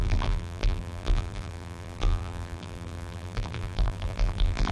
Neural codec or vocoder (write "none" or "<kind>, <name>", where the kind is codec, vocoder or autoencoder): vocoder, BigVGAN v2